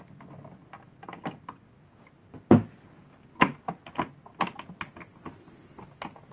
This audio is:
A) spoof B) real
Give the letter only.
B